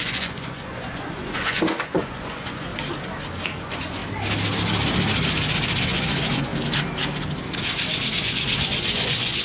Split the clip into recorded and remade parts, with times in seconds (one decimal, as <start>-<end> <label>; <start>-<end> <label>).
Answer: 0.0-2.7 remade; 2.7-3.6 recorded; 3.6-4.0 remade; 4.0-5.8 recorded; 5.8-6.5 remade; 6.5-8.2 recorded; 8.2-9.4 remade